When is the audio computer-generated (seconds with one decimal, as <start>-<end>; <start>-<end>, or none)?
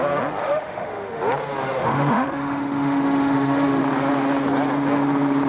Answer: 0.4-1.2; 1.8-3.8